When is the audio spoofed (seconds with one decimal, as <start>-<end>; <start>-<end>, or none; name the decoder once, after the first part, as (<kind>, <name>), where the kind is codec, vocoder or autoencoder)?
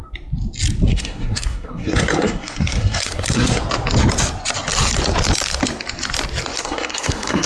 0.9-3.6 (codec, SNAC); 6.6-7.5